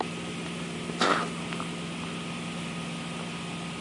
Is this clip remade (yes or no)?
no